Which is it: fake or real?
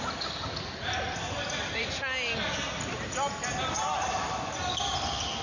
real